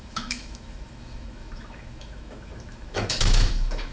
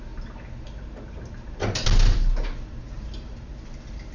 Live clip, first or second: second